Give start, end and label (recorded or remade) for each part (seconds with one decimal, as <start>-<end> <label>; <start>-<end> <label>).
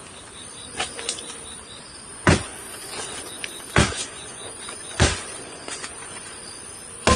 0.0-2.1 recorded; 2.1-6.4 remade; 6.4-7.2 recorded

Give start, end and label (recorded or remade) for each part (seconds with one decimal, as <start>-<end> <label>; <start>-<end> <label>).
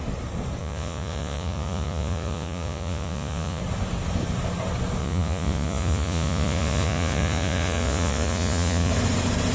0.0-0.6 recorded; 0.6-3.6 remade; 3.6-5.0 recorded; 5.0-8.9 remade; 8.9-9.5 recorded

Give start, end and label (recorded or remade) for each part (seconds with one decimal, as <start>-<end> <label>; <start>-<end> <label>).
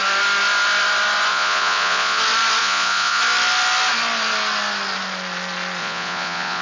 0.0-1.3 recorded; 1.3-2.2 remade; 2.2-2.6 recorded; 2.6-3.2 remade; 3.2-5.8 recorded; 5.8-6.6 remade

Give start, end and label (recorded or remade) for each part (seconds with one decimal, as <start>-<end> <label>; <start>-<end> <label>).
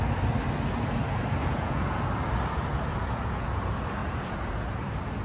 0.0-1.4 recorded; 1.4-2.0 remade; 2.0-2.9 recorded; 2.9-3.6 remade; 3.6-4.0 recorded; 4.0-4.8 remade; 4.8-5.2 recorded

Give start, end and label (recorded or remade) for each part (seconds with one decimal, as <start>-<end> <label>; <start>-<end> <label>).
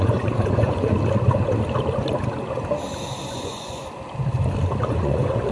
0.0-0.9 remade; 0.9-3.3 recorded; 3.3-3.8 remade; 3.8-4.9 recorded; 4.9-5.5 remade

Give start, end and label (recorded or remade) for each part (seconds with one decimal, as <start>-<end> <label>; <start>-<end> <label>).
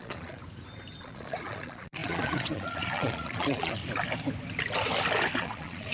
0.0-0.4 remade; 0.4-1.0 recorded; 1.0-3.8 remade; 3.8-5.4 recorded; 5.4-5.9 remade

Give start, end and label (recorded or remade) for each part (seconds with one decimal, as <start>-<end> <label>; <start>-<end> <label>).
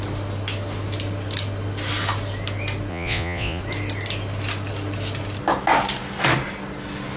0.0-2.9 recorded; 2.9-3.6 remade; 3.6-7.2 recorded